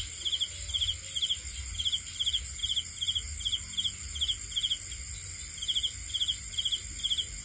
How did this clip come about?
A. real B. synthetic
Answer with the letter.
A